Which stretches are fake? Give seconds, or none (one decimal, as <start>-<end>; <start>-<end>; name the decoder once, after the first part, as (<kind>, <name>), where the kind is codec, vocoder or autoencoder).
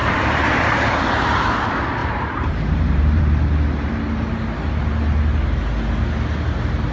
0.0-0.9 (vocoder, BigVGAN v2); 2.0-3.2